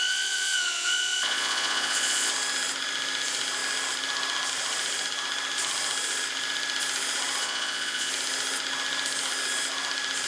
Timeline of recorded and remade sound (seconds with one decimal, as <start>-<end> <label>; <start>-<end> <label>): 0.0-2.3 remade; 2.3-7.4 recorded; 7.4-8.1 remade; 8.1-10.3 recorded